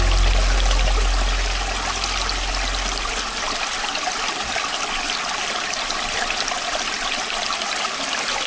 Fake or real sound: real